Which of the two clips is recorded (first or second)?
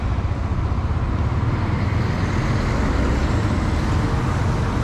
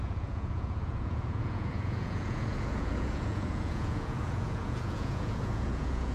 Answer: first